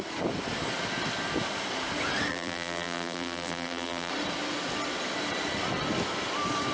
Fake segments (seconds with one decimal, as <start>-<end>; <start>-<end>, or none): 2.3-4.1